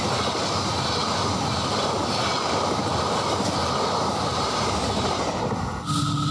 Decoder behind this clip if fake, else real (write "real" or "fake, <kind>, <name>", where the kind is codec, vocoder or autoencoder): real